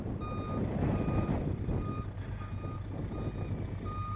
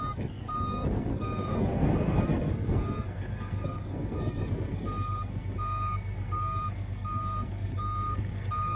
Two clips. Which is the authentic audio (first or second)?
first